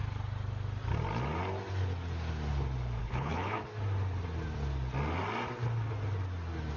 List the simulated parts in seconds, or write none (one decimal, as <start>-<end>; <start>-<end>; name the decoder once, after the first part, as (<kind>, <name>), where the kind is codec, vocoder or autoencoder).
3.0-3.6 (codec, HILCodec)